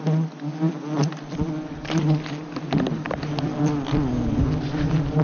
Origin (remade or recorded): recorded